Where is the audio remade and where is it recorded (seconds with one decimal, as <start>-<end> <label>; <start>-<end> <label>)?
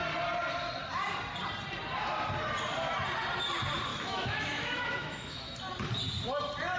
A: 0.0-3.9 recorded; 3.9-5.6 remade; 5.6-6.8 recorded